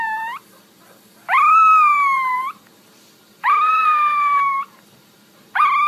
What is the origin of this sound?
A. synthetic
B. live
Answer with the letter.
A